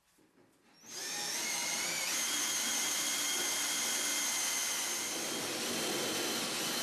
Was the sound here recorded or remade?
recorded